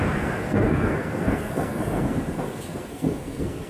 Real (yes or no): no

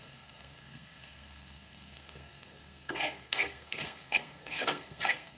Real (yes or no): no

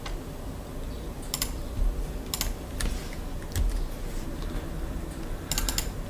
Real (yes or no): yes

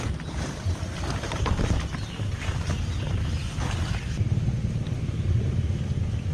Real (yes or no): yes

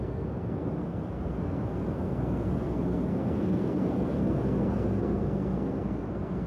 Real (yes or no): no